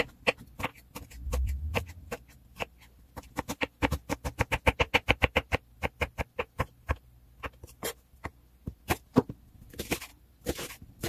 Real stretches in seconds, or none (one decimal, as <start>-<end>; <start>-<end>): 0.0-11.1